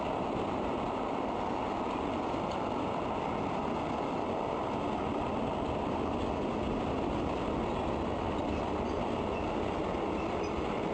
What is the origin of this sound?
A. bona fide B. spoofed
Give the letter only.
A